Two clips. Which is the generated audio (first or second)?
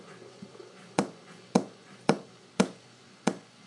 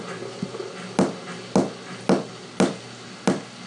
first